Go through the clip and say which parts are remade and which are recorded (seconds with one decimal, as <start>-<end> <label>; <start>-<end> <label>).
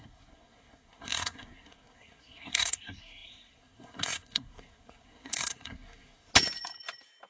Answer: 0.0-6.3 remade; 6.3-7.3 recorded